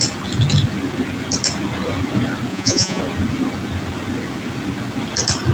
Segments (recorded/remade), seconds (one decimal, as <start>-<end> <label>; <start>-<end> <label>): 0.0-2.5 recorded; 2.5-3.0 remade; 3.0-5.5 recorded